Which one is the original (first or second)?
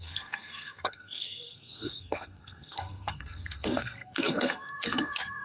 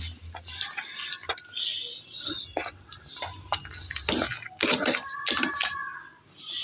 second